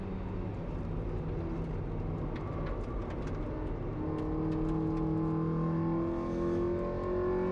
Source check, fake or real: real